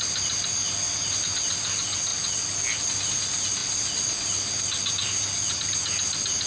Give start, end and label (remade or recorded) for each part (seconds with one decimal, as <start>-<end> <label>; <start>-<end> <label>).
0.0-6.5 recorded